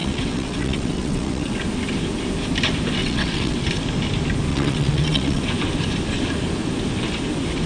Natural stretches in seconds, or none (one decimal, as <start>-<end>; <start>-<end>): 1.5-3.0; 3.7-4.5; 5.4-7.7